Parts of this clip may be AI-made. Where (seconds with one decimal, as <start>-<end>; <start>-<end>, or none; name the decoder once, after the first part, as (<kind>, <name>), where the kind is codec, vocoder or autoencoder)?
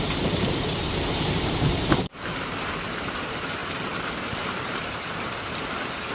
0.0-6.1 (vocoder, BigVGAN v2)